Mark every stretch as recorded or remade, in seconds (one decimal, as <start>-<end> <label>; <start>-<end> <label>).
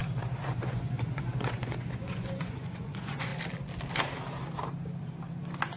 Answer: 0.0-0.6 recorded; 0.6-3.3 remade; 3.3-5.8 recorded